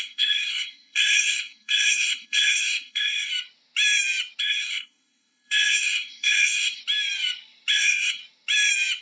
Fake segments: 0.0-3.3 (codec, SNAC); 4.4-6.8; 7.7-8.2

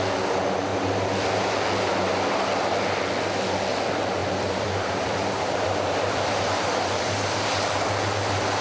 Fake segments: 4.2-6.9 (vocoder, BigVGAN v2)

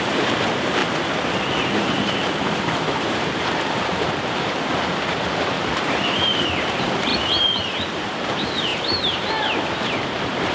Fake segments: 0.0-0.8 (vocoder, BigVGAN v2); 1.5-7.1; 7.9-10.5